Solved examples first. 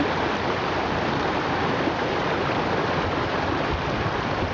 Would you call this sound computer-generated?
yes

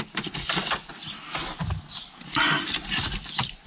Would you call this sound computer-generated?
no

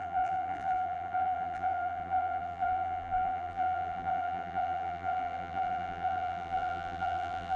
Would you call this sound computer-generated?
yes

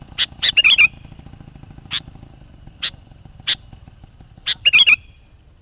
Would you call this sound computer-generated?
yes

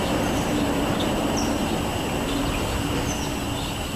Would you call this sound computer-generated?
no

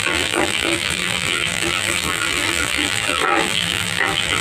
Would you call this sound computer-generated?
yes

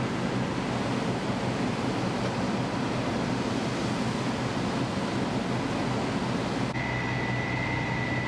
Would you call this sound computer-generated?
no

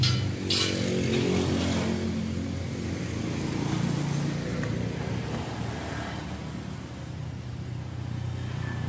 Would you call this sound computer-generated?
no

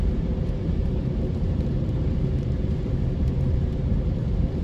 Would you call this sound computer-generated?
yes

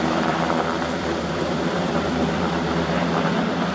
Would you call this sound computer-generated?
yes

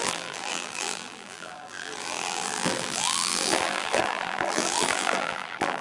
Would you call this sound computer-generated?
yes